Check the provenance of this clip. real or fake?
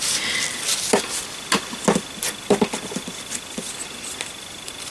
real